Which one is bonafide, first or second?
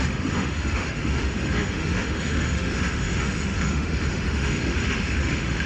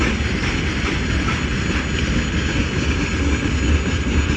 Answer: second